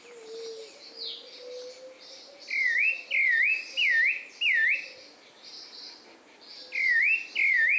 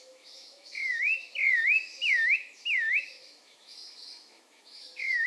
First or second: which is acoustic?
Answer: first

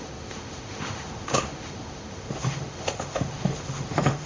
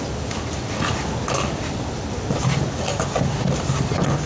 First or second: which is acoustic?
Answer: second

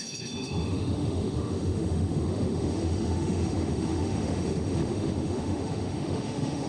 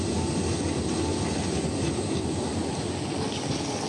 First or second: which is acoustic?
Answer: second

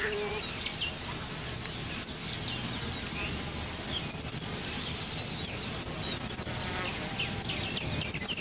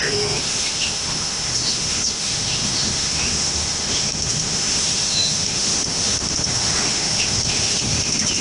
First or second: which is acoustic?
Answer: first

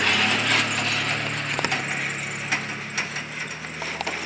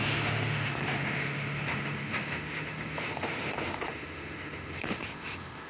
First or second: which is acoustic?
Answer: first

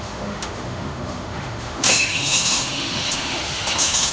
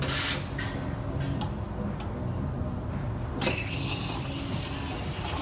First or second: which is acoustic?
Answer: second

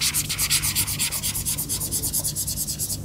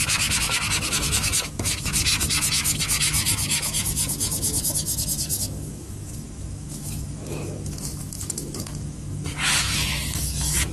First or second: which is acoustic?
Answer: first